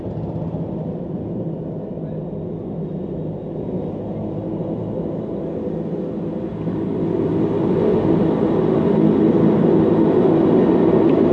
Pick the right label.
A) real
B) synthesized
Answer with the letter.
A